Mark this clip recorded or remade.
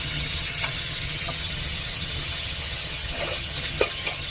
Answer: remade